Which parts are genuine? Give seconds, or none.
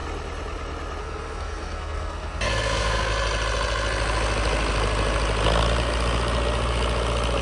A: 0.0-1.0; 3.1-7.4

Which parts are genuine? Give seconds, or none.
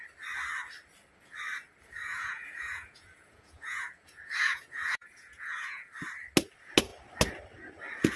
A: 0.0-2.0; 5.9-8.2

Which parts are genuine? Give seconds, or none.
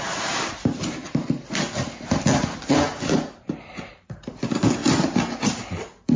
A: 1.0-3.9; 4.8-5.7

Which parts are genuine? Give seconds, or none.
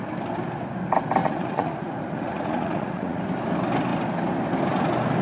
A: 0.0-1.2; 3.2-5.2